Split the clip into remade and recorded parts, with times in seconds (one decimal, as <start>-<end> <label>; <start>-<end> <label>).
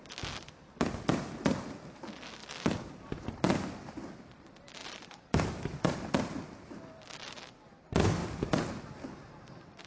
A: 0.0-9.9 recorded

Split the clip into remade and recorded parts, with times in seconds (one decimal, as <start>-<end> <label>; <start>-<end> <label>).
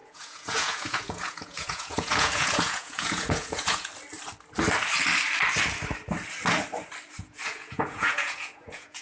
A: 0.0-3.9 remade; 3.9-7.2 recorded; 7.2-9.0 remade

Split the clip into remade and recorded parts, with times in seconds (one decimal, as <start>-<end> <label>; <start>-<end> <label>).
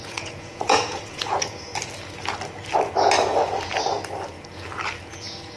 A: 0.0-1.7 remade; 1.7-5.1 recorded; 5.1-5.6 remade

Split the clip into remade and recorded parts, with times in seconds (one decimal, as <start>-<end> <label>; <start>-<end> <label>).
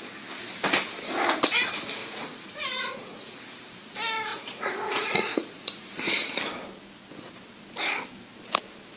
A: 0.0-2.0 recorded; 2.0-3.4 remade; 3.4-4.3 recorded; 4.3-6.0 remade; 6.0-9.0 recorded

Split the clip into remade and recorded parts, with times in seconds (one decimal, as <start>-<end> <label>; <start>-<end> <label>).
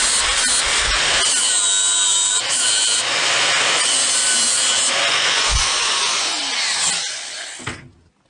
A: 0.0-5.0 recorded; 5.0-6.4 remade; 6.4-8.3 recorded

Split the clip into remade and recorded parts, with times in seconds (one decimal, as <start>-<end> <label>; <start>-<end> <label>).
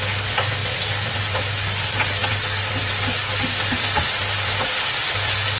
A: 0.0-5.6 recorded